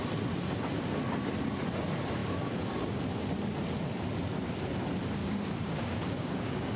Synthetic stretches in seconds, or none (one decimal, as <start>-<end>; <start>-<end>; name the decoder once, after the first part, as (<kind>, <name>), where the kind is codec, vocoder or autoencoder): 5.2-6.8 (codec, DAC)